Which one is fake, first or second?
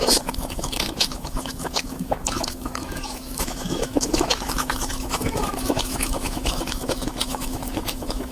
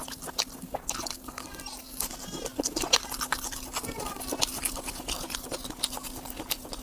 first